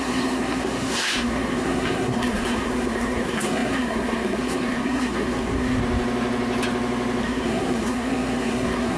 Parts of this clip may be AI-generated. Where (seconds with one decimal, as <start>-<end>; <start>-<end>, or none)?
0.0-5.8; 7.2-9.0

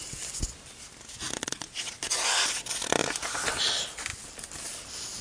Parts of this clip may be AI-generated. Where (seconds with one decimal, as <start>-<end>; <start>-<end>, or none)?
1.4-2.0

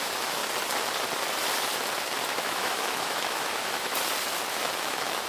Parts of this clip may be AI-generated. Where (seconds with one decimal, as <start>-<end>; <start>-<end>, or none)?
0.0-0.4; 2.4-3.9; 4.5-5.3

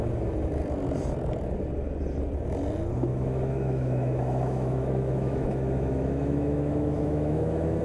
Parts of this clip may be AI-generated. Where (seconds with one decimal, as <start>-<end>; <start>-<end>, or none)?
3.1-7.8

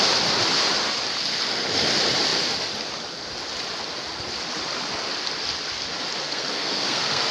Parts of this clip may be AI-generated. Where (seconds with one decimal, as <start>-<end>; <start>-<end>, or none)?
6.2-7.3

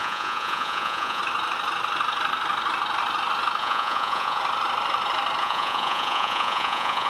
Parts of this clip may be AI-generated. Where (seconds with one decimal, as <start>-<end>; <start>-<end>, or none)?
0.0-1.2; 3.6-4.4; 5.4-7.1